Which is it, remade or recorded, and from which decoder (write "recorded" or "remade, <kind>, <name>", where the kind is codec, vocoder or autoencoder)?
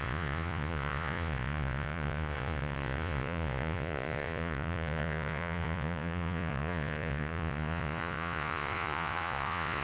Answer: remade, vocoder, Vocos